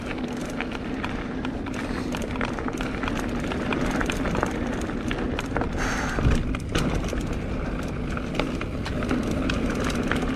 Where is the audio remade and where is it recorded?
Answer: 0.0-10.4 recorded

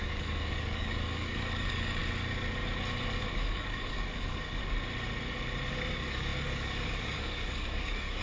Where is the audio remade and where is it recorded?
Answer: 0.0-2.0 remade; 2.0-3.2 recorded; 3.2-4.6 remade; 4.6-5.7 recorded; 5.7-8.2 remade

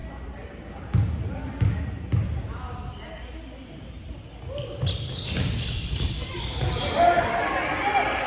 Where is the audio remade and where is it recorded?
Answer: 0.0-8.3 recorded

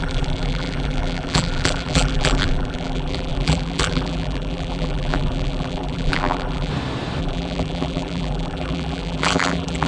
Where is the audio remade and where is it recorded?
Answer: 0.0-6.7 remade; 6.7-7.2 recorded; 7.2-9.9 remade